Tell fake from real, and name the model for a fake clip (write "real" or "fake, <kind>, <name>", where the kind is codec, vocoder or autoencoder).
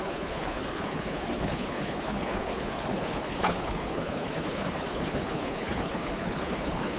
fake, codec, HILCodec